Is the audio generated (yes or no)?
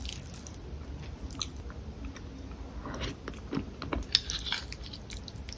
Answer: no